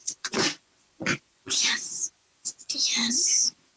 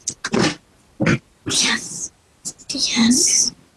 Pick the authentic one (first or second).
second